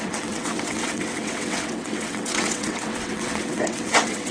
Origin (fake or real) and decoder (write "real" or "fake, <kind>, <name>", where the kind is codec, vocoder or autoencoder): fake, vocoder, WaveNeXt